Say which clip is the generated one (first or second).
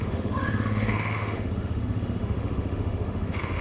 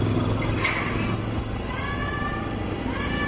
first